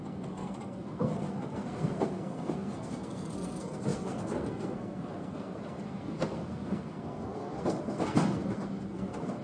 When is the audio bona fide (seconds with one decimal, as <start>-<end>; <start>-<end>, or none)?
none